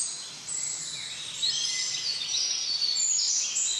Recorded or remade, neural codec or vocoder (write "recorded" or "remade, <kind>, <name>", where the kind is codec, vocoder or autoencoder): recorded